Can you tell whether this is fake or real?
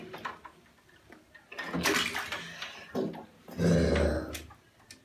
real